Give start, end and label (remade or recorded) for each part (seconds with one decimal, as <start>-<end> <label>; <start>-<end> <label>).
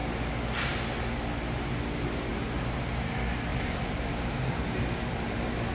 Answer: 0.0-3.5 recorded; 3.5-4.6 remade; 4.6-5.7 recorded